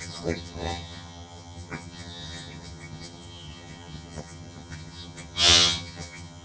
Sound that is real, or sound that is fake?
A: fake